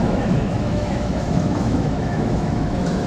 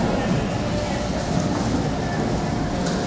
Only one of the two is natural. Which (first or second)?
second